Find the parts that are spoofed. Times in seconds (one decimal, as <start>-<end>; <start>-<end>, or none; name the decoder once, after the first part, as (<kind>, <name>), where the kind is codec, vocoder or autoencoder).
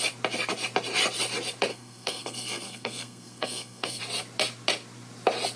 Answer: 1.7-4.0 (codec, SNAC)